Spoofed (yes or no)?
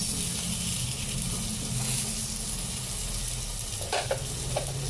no